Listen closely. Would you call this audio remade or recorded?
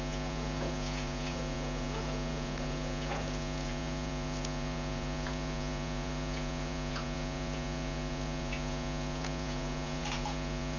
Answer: remade